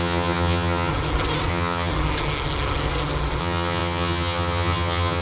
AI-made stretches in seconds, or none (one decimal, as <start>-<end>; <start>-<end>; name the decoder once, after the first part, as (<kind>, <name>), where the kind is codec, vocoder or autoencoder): 0.0-0.9 (vocoder, HiFi-GAN); 1.5-1.9; 3.4-5.2